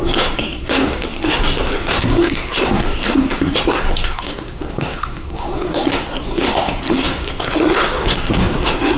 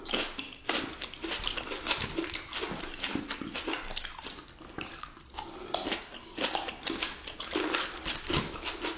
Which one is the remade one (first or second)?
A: first